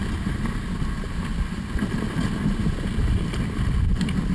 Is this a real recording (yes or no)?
yes